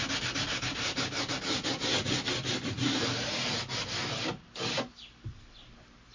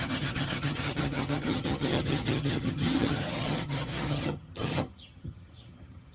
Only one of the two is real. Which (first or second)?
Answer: first